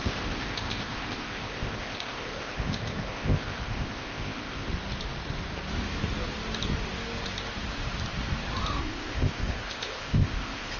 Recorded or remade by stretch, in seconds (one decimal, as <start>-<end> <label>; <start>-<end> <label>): 0.0-4.7 remade; 4.7-8.8 recorded; 8.8-10.8 remade